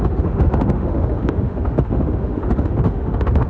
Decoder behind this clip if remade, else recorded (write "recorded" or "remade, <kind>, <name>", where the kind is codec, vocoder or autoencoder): remade, autoencoder, DAC-VAE